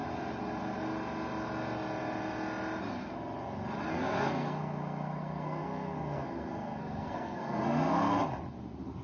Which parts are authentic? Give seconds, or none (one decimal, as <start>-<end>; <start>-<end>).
0.0-3.9; 8.2-9.0